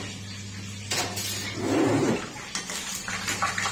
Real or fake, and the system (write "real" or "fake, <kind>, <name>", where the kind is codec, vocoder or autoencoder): real